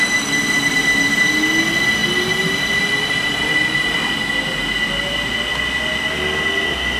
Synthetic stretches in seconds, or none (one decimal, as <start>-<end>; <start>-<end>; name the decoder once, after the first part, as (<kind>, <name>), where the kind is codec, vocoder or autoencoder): none